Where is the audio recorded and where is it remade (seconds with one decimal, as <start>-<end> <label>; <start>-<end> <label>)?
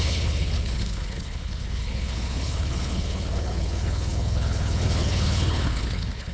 0.0-6.3 remade